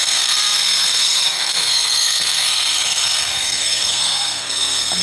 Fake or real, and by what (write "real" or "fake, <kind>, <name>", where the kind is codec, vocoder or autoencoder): fake, codec, SNAC